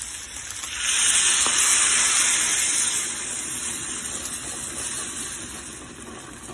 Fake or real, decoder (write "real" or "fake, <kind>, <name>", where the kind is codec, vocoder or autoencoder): real